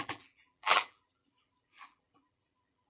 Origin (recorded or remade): remade